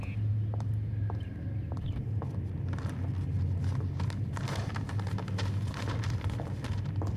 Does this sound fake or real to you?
real